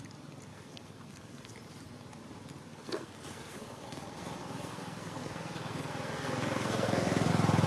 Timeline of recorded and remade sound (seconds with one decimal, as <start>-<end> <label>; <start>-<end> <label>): 0.0-0.5 recorded; 0.5-1.5 remade; 1.5-2.7 recorded; 2.7-7.3 remade; 7.3-7.7 recorded